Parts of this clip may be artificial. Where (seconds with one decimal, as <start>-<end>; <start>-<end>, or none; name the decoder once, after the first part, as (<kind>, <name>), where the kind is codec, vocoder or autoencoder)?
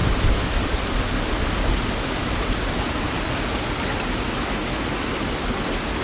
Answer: none